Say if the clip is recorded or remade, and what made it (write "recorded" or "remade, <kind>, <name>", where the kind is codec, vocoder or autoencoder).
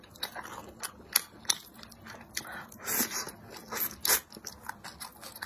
recorded